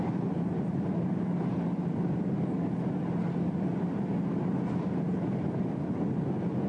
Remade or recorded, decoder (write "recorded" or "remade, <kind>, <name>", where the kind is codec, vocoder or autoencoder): recorded